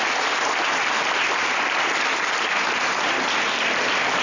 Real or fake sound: real